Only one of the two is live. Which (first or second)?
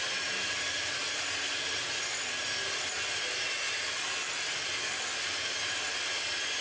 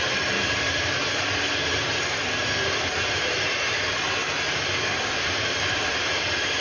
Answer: first